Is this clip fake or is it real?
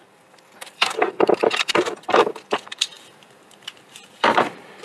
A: fake